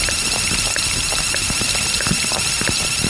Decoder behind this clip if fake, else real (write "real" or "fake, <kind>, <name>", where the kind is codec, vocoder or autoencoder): real